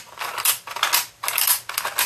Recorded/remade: recorded